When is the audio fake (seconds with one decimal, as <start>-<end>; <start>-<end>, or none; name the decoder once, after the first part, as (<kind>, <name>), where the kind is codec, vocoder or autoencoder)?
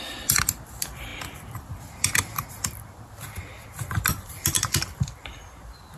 0.0-6.0 (vocoder, BigVGAN v2)